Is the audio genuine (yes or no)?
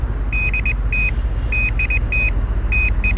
yes